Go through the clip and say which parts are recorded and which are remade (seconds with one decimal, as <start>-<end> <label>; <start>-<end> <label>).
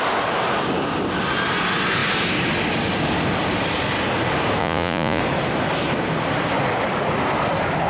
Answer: 0.0-4.6 recorded; 4.6-5.2 remade; 5.2-7.9 recorded